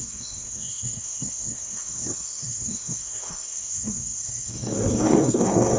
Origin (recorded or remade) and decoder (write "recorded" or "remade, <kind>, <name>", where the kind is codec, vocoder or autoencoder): remade, codec, SNAC